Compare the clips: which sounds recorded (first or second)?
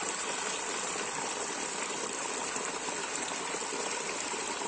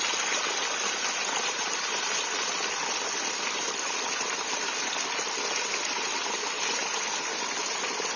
second